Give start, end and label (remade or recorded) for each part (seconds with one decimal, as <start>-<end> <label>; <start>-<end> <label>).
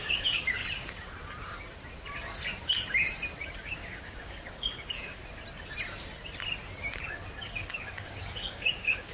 0.0-0.6 remade; 0.6-3.5 recorded; 3.5-5.2 remade; 5.2-7.5 recorded; 7.5-9.1 remade